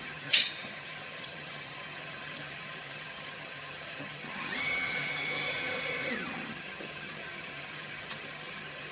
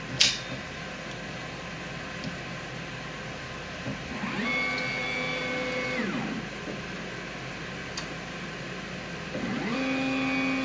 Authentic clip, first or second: second